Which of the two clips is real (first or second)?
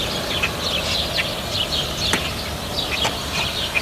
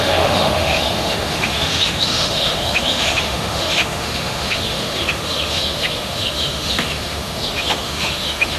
first